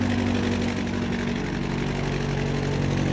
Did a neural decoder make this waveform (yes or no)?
no